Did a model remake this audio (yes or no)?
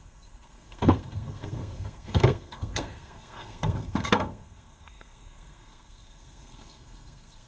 yes